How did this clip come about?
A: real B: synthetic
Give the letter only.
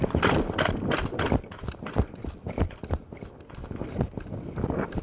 A